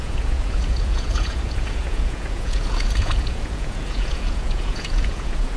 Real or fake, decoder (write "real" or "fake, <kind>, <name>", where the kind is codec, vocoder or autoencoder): fake, vocoder, Vocos